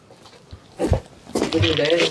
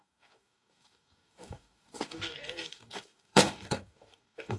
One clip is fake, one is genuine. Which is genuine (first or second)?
first